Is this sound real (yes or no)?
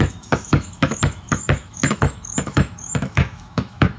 no